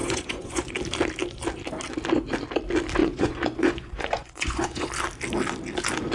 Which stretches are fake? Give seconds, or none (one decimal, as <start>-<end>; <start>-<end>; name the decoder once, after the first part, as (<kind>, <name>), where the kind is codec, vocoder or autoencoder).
0.0-0.7 (vocoder, Vocos); 3.0-4.9